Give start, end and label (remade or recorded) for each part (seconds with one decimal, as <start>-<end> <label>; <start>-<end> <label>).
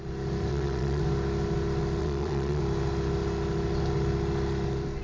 0.0-0.5 recorded; 0.5-1.0 remade; 1.0-2.0 recorded; 2.0-2.6 remade; 2.6-5.0 recorded